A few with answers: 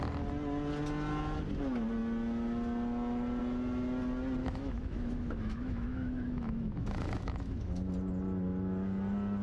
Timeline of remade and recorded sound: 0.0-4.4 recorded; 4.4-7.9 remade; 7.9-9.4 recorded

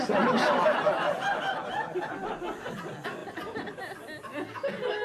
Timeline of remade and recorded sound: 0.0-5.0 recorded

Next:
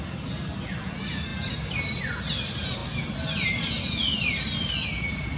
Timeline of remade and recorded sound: 0.0-5.4 recorded

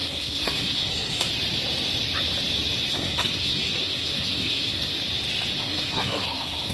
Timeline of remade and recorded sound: 0.0-1.3 remade; 1.3-2.9 recorded; 2.9-4.9 remade; 4.9-5.6 recorded; 5.6-6.7 remade